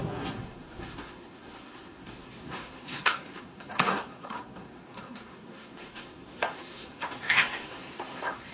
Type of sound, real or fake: fake